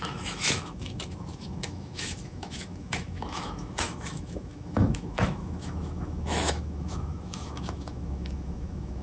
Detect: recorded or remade remade